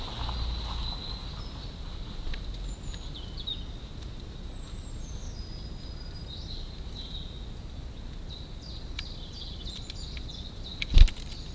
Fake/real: real